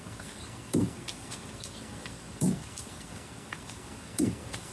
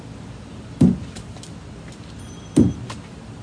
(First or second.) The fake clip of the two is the first